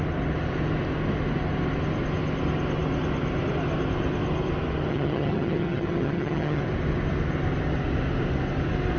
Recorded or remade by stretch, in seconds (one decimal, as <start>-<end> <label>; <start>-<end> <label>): 0.0-4.9 recorded; 4.9-6.6 remade; 6.6-9.0 recorded

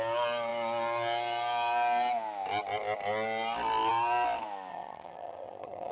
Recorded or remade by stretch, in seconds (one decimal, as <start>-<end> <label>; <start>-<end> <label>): 0.0-4.7 recorded; 4.7-5.9 remade